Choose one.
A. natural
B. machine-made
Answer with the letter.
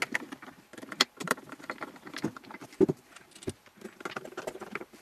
A